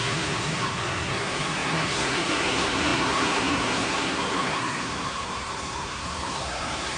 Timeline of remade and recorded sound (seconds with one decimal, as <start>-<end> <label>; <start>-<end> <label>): 0.0-7.0 remade